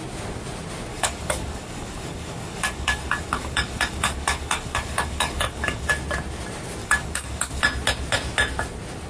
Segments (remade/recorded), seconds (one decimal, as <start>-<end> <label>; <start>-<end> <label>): 0.0-0.9 recorded; 0.9-5.9 remade; 5.9-6.8 recorded; 6.8-7.6 remade; 7.6-9.1 recorded